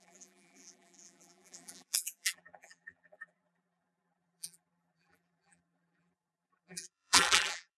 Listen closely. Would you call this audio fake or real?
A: fake